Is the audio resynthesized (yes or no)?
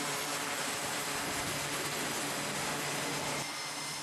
no